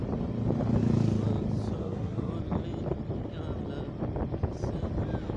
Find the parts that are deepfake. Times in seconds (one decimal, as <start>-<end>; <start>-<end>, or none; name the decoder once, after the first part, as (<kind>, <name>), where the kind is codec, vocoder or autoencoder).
1.8-2.3 (codec, SNAC)